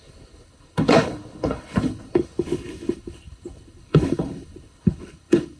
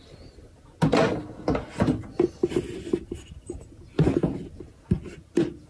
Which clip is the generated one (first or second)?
first